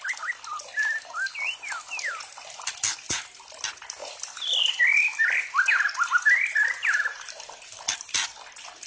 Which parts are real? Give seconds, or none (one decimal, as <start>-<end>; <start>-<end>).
0.0-7.1; 8.0-8.9